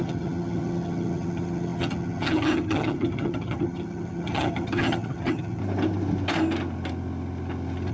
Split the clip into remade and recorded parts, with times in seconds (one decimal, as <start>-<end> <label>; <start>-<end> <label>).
0.0-5.6 remade; 5.6-7.9 recorded